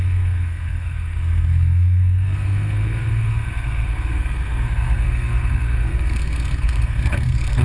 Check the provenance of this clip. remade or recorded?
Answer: remade